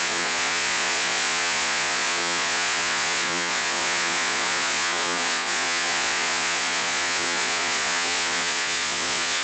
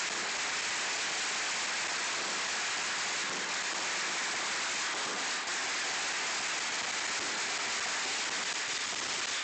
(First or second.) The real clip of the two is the second